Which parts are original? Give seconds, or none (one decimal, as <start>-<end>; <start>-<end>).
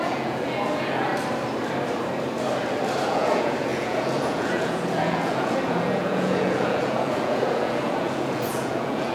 1.1-3.1